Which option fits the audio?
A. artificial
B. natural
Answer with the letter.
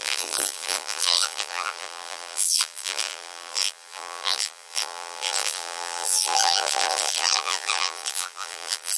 A